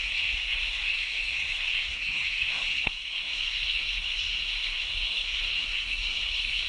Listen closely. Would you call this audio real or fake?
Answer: fake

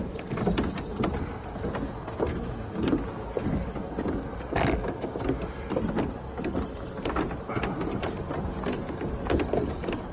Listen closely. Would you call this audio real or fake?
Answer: real